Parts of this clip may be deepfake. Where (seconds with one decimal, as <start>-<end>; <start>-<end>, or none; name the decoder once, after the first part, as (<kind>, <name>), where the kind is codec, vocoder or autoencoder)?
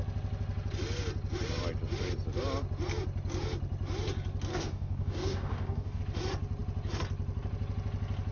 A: 4.5-6.0 (codec, DAC)